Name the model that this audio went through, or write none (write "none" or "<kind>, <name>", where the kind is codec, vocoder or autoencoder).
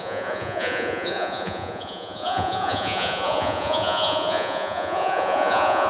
vocoder, Vocos